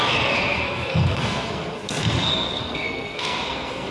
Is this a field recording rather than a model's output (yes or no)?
no